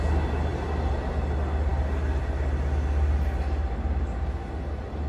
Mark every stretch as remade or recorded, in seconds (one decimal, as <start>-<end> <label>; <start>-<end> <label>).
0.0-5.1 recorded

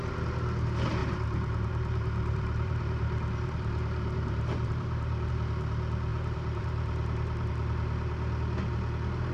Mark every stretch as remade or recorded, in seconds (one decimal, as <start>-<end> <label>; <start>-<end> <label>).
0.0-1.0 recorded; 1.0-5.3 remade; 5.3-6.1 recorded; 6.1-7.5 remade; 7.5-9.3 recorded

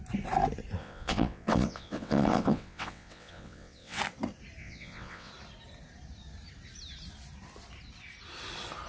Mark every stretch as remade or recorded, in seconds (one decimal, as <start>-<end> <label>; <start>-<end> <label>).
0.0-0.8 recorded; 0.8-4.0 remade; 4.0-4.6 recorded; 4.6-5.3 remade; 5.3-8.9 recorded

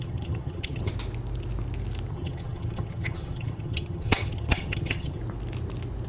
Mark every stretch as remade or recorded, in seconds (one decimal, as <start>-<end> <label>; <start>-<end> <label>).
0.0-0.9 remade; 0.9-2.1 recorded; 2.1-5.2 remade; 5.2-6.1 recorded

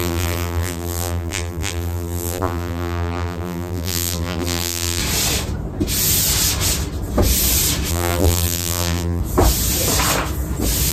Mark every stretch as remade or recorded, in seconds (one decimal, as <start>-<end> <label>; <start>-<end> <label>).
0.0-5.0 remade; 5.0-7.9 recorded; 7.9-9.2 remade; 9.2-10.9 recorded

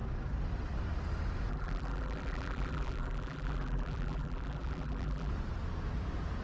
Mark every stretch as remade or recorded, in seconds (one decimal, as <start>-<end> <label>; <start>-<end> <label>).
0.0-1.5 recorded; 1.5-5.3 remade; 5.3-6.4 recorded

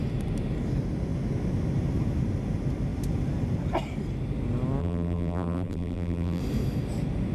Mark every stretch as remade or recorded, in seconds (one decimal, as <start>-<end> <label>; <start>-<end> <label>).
0.0-4.8 recorded; 4.8-6.4 remade; 6.4-7.3 recorded

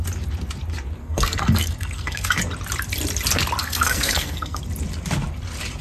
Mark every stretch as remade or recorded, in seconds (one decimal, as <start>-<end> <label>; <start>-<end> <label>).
0.0-1.0 recorded; 1.0-2.4 remade; 2.4-3.6 recorded; 3.6-4.6 remade; 4.6-5.8 recorded